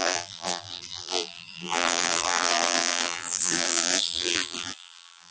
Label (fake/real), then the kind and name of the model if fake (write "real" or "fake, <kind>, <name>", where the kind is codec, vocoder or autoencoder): fake, vocoder, BigVGAN v2